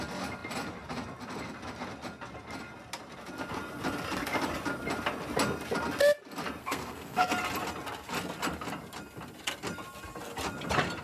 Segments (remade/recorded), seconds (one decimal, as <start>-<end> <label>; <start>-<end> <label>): 0.0-6.6 recorded; 6.6-7.3 remade; 7.3-11.0 recorded